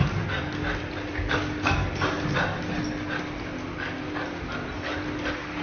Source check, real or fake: real